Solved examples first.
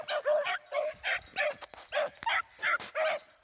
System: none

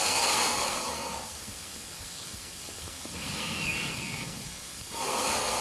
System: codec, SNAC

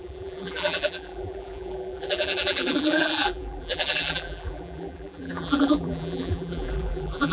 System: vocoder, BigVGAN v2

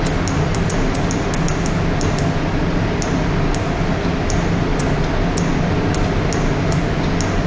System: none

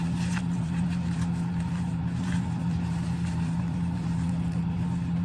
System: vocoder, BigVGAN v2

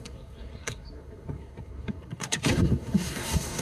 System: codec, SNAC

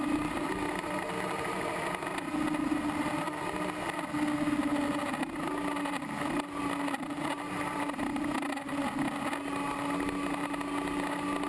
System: none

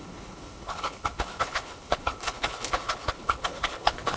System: codec, HILCodec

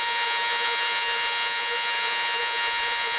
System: vocoder, Vocos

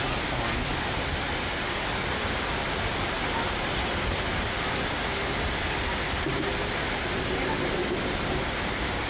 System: none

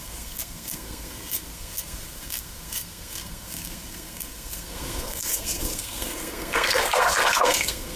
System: codec, SNAC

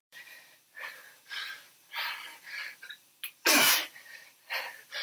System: vocoder, BigVGAN v2